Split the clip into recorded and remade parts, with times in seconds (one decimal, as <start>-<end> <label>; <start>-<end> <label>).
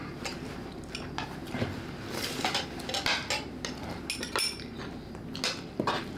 0.0-6.2 recorded